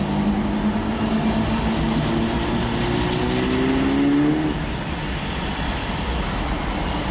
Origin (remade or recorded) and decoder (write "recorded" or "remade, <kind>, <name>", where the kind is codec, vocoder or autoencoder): recorded